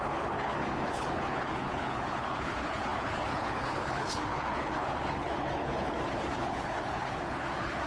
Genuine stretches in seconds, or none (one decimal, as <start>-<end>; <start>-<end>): none